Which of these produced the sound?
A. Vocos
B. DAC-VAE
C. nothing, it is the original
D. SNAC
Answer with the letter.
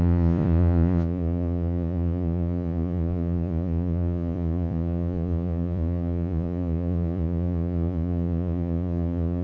A